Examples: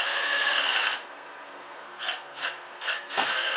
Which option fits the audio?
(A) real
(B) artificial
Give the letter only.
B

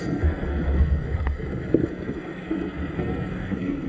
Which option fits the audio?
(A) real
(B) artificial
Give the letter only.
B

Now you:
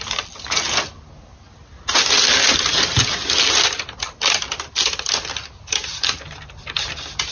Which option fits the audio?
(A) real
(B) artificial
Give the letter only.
A